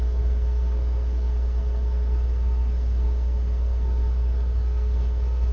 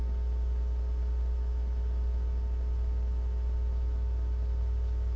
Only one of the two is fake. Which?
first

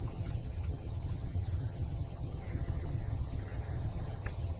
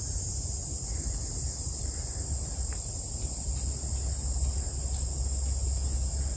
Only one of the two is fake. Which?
first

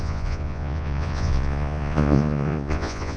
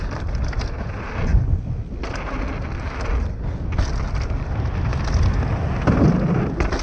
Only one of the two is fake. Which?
first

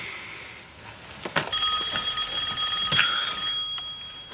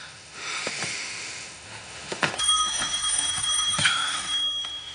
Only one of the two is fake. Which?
second